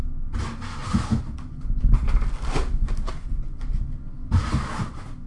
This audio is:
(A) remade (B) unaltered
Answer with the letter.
B